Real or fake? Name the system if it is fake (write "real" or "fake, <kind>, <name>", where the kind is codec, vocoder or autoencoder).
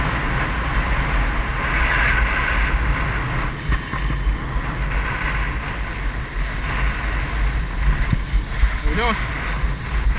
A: real